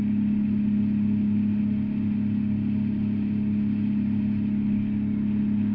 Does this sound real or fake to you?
real